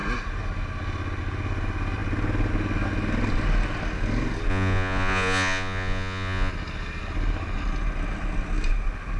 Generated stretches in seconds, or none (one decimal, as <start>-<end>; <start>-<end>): 4.5-6.5